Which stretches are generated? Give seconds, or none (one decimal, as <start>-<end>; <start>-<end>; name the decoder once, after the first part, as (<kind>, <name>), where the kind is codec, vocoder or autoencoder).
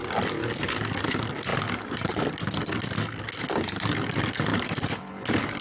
1.5-2.3 (vocoder, BigVGAN v2); 4.5-5.1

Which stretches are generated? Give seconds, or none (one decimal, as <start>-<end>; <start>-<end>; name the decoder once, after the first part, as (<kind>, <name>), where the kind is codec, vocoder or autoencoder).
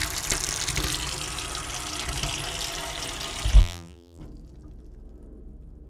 3.6-4.2 (vocoder, BigVGAN v2)